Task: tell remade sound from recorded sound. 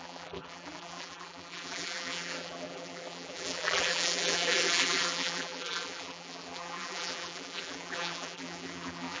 remade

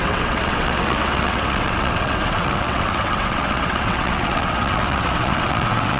remade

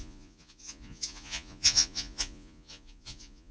remade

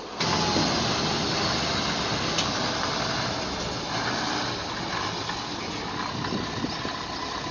recorded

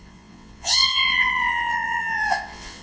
remade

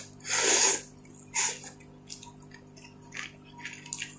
recorded